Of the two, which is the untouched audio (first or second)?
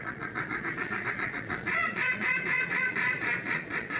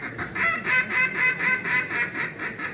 second